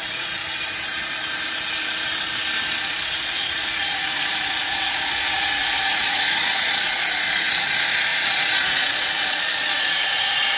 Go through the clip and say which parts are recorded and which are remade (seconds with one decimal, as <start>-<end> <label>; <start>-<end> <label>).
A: 0.0-0.4 remade; 0.4-3.3 recorded; 3.3-10.6 remade